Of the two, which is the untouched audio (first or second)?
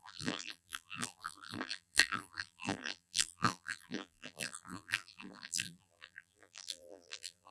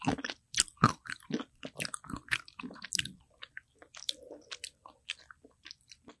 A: second